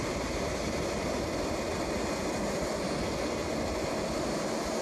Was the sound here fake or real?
real